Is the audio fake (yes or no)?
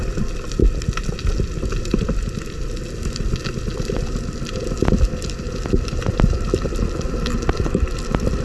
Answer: no